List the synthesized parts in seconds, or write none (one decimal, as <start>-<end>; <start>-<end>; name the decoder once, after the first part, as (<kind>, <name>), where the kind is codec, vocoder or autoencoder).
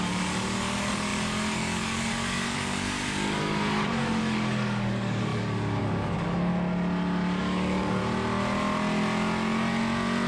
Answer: 0.0-6.5 (codec, DAC); 7.4-8.0